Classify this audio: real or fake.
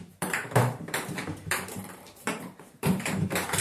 fake